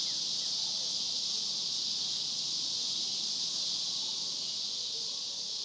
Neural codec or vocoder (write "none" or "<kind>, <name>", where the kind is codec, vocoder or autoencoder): none